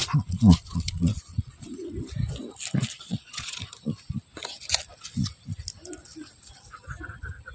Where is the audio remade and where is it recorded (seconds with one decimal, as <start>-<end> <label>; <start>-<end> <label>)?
0.0-1.7 remade; 1.7-2.9 recorded; 2.9-3.6 remade; 3.6-7.5 recorded

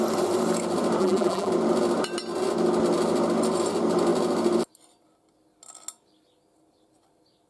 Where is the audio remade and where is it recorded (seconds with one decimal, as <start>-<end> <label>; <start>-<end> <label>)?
0.0-1.0 recorded; 1.0-1.5 remade; 1.5-7.5 recorded

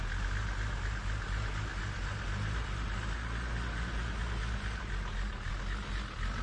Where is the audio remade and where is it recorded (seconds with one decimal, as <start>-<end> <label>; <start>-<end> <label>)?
0.0-6.4 recorded

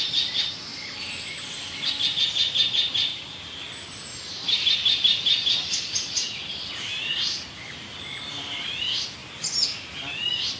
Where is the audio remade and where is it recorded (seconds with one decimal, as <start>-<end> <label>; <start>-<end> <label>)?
0.0-0.7 recorded; 0.7-1.5 remade; 1.5-3.1 recorded; 3.1-3.7 remade; 3.7-10.6 recorded

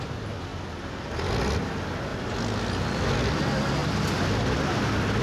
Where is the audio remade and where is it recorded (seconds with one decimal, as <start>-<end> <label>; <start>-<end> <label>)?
0.0-5.2 recorded

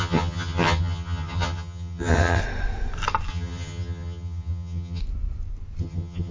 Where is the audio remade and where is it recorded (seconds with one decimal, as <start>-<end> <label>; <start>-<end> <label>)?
0.0-2.4 remade; 2.4-3.3 recorded; 3.3-5.0 remade; 5.0-5.8 recorded; 5.8-6.3 remade

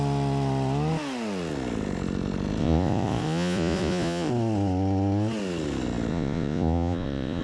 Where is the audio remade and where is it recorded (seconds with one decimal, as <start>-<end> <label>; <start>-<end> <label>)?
0.0-2.6 recorded; 2.6-4.3 remade; 4.3-6.1 recorded; 6.1-7.4 remade

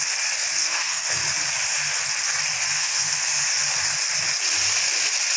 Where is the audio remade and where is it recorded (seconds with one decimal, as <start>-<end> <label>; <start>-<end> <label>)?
0.0-0.6 recorded; 0.6-1.2 remade; 1.2-2.6 recorded; 2.6-3.3 remade; 3.3-5.4 recorded